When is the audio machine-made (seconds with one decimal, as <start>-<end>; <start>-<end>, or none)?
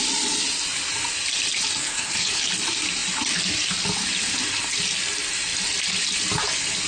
1.8-2.5